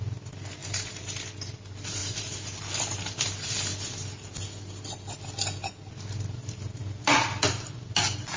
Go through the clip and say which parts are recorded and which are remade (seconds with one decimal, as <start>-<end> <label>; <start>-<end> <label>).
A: 0.0-0.6 recorded; 0.6-1.1 remade; 1.1-2.0 recorded; 2.0-2.6 remade; 2.6-8.4 recorded